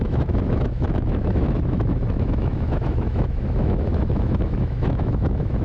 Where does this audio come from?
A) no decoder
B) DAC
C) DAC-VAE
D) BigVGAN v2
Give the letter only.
C